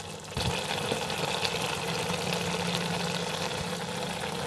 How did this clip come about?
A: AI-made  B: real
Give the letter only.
B